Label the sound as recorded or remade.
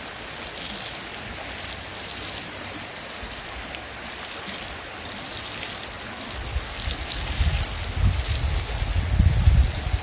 recorded